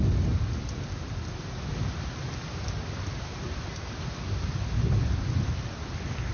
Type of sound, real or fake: real